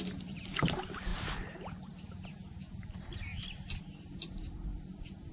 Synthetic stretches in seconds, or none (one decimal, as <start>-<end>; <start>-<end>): 0.0-1.1; 2.7-3.3; 3.8-5.3